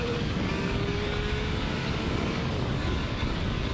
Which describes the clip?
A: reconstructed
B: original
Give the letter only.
A